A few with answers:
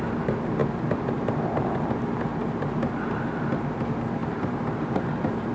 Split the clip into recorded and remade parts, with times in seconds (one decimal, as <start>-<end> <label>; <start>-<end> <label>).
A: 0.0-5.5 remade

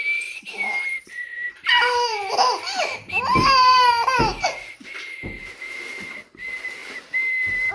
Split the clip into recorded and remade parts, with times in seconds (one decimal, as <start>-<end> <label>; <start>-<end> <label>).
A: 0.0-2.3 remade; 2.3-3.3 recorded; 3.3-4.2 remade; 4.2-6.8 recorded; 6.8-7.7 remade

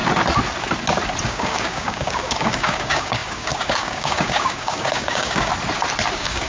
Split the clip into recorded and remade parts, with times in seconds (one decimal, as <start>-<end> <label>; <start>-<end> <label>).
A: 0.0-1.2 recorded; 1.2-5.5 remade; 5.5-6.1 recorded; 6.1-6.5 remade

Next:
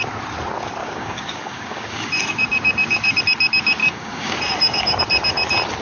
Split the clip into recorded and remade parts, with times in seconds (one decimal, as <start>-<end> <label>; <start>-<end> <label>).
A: 0.0-0.8 recorded; 0.8-3.2 remade; 3.2-3.8 recorded; 3.8-5.0 remade; 5.0-5.8 recorded

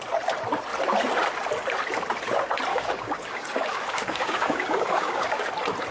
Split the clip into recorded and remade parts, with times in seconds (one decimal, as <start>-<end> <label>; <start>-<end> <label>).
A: 0.0-2.7 recorded; 2.7-5.5 remade; 5.5-5.9 recorded

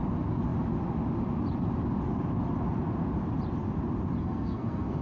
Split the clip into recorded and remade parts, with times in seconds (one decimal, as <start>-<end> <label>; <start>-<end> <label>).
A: 0.0-4.2 recorded; 4.2-5.0 remade